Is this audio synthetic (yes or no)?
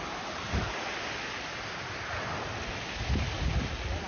no